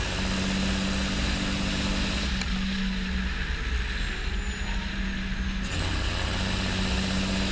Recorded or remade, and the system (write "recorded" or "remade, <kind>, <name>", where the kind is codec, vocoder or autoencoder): recorded